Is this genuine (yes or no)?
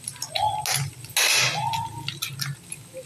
yes